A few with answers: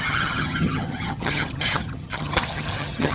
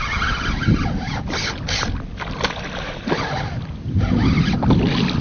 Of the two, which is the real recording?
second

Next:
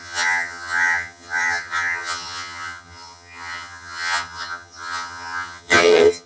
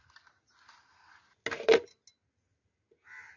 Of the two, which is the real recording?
second